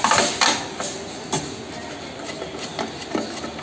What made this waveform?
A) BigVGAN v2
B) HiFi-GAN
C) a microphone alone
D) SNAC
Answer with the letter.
C